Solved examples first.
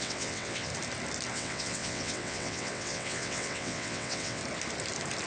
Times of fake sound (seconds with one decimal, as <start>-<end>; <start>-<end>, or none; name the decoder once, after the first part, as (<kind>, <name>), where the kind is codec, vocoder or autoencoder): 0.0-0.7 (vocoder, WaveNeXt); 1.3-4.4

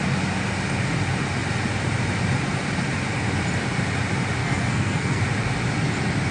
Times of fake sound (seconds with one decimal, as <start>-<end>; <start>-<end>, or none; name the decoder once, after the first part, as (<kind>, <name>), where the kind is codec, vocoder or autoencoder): 4.4-5.2 (codec, SNAC)

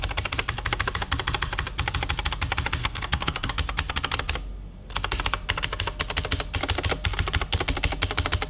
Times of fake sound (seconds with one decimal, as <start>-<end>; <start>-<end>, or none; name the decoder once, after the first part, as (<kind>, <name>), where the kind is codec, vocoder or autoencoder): 2.8-3.5 (codec, SNAC)